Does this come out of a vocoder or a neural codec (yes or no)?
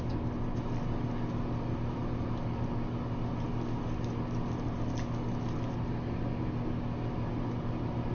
no